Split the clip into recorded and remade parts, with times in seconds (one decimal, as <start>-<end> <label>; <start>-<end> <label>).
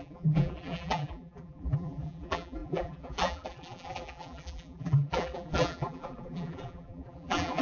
0.0-7.6 remade